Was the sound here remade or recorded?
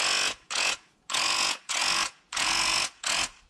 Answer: remade